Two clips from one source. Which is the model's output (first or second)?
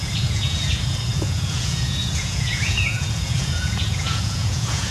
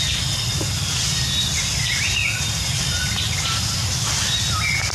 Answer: first